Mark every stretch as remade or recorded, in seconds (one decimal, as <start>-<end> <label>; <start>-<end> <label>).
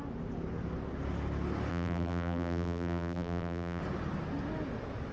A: 0.0-1.7 recorded; 1.7-3.8 remade; 3.8-5.1 recorded